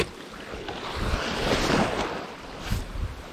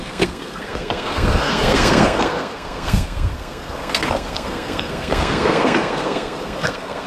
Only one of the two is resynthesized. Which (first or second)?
second